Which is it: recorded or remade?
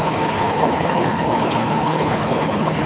remade